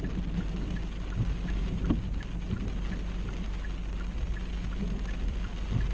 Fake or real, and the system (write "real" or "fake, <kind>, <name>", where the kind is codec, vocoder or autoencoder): real